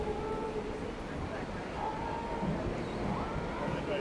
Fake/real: real